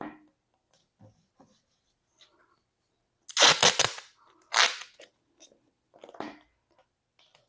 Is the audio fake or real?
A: real